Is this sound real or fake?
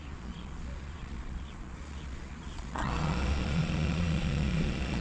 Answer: fake